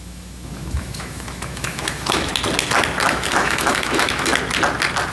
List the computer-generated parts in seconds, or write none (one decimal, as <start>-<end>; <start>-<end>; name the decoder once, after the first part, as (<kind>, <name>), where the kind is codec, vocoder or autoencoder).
0.0-2.3 (autoencoder, DAC-VAE); 3.1-4.3